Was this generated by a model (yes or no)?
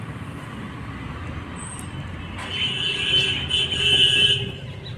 no